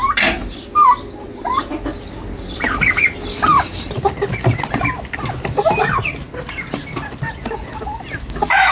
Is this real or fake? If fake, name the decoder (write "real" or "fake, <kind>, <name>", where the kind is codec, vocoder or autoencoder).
fake, vocoder, BigVGAN v2